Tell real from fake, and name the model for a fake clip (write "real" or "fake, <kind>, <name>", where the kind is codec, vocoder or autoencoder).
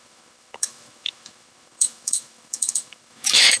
fake, autoencoder, DAC-VAE